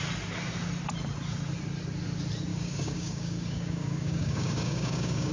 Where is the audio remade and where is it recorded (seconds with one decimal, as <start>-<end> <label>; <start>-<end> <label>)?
0.0-2.5 recorded; 2.5-5.3 remade